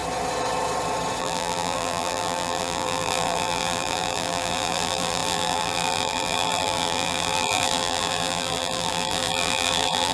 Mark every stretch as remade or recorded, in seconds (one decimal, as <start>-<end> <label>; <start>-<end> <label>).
0.0-1.2 recorded; 1.2-10.1 remade